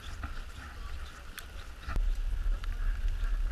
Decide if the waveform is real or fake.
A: real